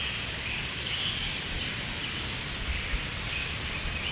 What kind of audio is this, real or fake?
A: real